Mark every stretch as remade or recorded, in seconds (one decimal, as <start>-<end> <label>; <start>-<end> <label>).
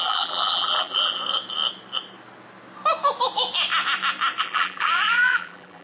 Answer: 0.0-1.2 remade; 1.2-4.4 recorded; 4.4-5.8 remade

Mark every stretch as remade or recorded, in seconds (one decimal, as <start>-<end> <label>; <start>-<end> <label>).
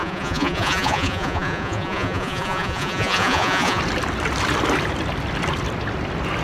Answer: 0.0-3.8 remade; 3.8-6.4 recorded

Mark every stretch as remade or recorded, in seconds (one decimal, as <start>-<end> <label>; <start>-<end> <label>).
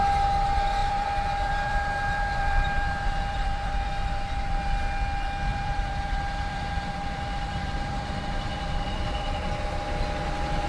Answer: 0.0-0.8 recorded; 0.8-4.5 remade; 4.5-5.5 recorded; 5.5-9.6 remade; 9.6-10.7 recorded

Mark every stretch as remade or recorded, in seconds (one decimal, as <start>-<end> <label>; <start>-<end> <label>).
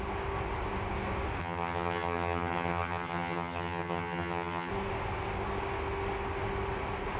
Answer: 0.0-1.4 recorded; 1.4-4.7 remade; 4.7-7.2 recorded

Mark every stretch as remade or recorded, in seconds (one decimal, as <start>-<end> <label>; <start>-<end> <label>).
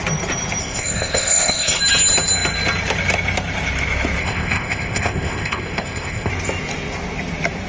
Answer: 0.0-0.6 recorded; 0.6-1.8 remade; 1.8-4.2 recorded; 4.2-6.3 remade; 6.3-7.7 recorded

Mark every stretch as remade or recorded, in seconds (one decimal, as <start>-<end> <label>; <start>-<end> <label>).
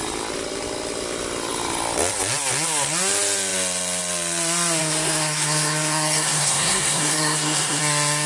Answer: 0.0-4.8 recorded; 4.8-7.8 remade; 7.8-8.3 recorded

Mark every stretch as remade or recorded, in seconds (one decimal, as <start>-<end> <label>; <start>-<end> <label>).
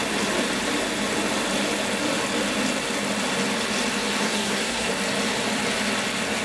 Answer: 0.0-4.2 recorded; 4.2-4.9 remade; 4.9-6.4 recorded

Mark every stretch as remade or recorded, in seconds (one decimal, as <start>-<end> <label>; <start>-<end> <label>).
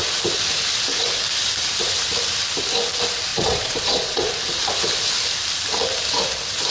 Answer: 0.0-3.3 recorded; 3.3-4.3 remade; 4.3-6.7 recorded